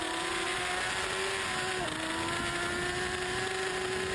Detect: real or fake real